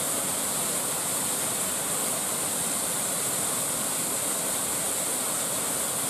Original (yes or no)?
yes